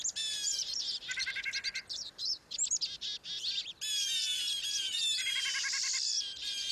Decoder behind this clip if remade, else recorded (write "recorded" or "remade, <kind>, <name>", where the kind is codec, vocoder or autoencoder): remade, vocoder, BigVGAN v2